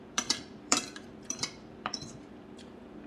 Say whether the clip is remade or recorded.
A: remade